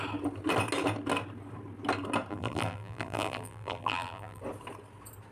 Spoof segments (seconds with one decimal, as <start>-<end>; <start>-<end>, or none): 2.3-4.4